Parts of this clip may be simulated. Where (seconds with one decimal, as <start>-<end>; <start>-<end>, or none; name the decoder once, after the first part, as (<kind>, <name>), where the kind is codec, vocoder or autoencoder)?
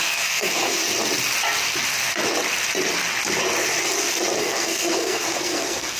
0.0-0.8 (codec, SNAC); 4.4-6.0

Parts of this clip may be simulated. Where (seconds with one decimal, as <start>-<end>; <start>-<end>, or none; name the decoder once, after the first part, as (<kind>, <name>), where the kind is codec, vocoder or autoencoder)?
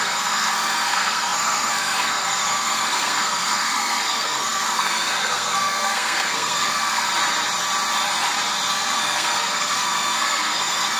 0.0-7.1 (codec, SNAC); 8.7-11.0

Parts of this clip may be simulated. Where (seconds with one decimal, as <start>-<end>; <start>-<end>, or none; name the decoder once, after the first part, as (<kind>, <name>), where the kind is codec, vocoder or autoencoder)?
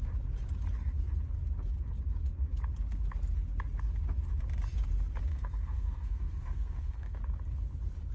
5.3-7.2 (codec, SNAC)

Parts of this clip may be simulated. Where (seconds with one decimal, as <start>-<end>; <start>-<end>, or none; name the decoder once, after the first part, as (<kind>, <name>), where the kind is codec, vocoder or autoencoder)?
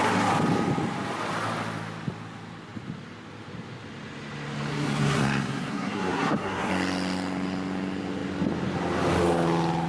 4.7-6.7 (codec, SNAC)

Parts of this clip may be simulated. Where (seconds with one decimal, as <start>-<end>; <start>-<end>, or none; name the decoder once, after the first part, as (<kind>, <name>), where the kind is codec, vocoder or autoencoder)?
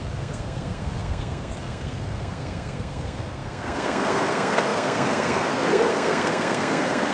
0.0-7.1 (codec, SNAC)